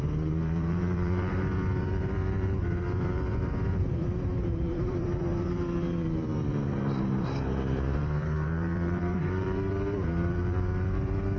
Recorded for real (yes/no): no